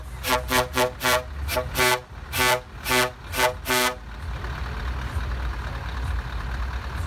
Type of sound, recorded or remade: recorded